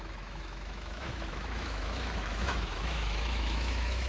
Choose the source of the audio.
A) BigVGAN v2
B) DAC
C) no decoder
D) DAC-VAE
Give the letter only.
D